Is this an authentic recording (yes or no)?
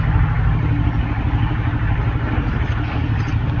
yes